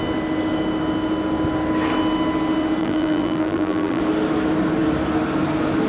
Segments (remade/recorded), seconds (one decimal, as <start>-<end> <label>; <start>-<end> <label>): 0.0-2.8 recorded; 2.8-4.0 remade; 4.0-5.9 recorded